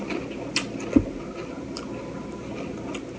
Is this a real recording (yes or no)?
yes